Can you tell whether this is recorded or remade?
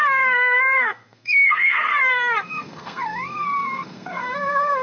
remade